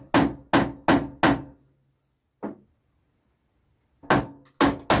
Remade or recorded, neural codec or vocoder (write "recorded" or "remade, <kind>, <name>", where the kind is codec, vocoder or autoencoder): recorded